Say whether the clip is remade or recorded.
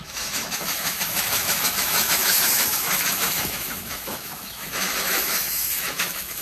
remade